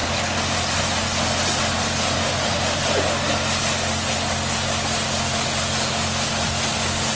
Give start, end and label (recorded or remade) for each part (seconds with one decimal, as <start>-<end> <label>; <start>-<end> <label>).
0.0-7.2 recorded